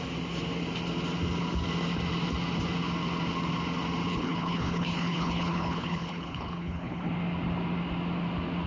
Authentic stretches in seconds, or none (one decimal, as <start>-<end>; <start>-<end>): 0.0-4.1; 7.1-8.7